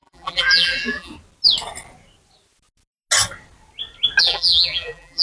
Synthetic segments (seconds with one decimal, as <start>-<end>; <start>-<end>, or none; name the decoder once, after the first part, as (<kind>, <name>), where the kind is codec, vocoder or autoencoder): 0.0-1.1 (vocoder, BigVGAN v2); 4.2-5.2